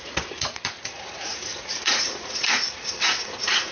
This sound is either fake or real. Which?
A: fake